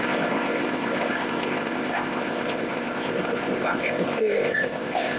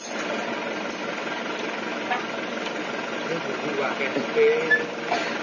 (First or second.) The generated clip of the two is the first